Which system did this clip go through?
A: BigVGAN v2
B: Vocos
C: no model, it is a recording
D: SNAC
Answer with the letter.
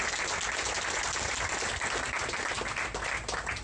C